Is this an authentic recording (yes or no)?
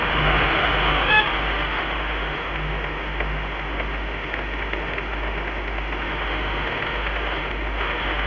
no